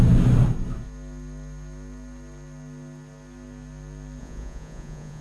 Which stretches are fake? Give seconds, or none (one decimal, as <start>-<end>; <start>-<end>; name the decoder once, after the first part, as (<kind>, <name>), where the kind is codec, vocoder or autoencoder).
4.2-5.2 (vocoder, Vocos)